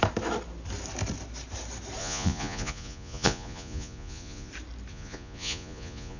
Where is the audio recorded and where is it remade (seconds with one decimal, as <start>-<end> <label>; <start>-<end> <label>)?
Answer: 0.0-2.0 recorded; 2.0-4.5 remade; 4.5-4.9 recorded; 4.9-6.2 remade